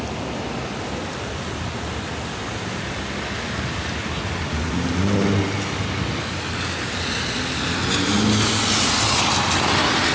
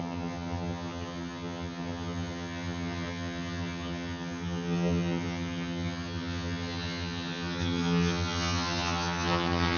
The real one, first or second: first